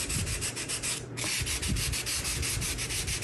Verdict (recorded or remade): recorded